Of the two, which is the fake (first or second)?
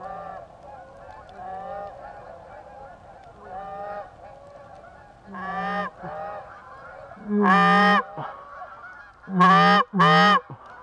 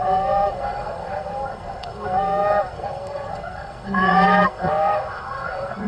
second